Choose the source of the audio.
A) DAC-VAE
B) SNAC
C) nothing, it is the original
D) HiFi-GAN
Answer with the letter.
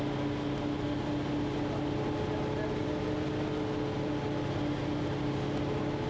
C